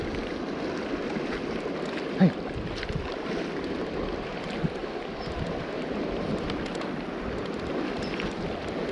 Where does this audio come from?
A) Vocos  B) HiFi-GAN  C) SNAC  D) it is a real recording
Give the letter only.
D